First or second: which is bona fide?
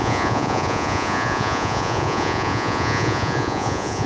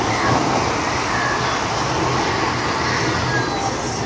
second